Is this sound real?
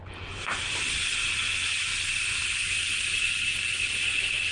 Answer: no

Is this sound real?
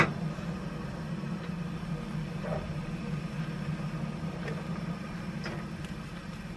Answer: yes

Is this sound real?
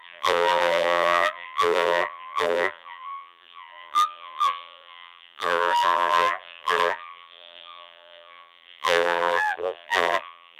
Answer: no